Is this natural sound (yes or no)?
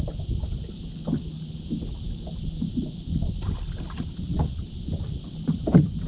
yes